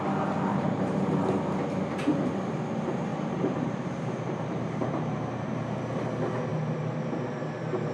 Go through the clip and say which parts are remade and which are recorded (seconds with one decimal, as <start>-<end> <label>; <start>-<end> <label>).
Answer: 0.0-0.5 recorded; 0.5-1.2 remade; 1.2-3.1 recorded; 3.1-5.8 remade; 5.8-6.5 recorded; 6.5-7.9 remade